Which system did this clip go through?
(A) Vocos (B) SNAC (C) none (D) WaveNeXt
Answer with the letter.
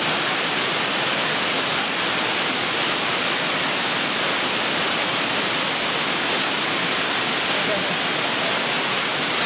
C